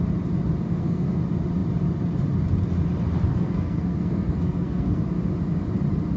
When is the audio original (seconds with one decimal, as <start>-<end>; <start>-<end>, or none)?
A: 0.0-0.7; 1.2-3.3; 5.0-6.2